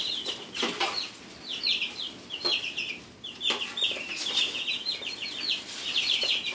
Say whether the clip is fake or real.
fake